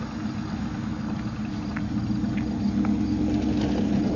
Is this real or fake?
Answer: real